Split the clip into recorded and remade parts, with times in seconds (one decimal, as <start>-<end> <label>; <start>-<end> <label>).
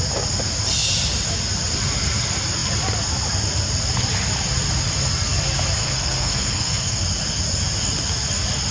0.0-5.8 recorded; 5.8-7.0 remade; 7.0-8.7 recorded